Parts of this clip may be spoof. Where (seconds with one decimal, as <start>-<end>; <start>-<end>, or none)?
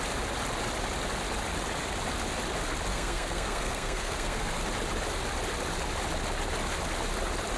2.9-4.5